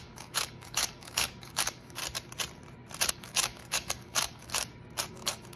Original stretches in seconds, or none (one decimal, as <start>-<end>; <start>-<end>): 2.0-3.1; 4.5-5.1